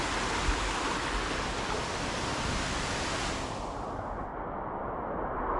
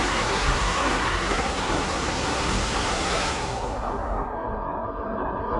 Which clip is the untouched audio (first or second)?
first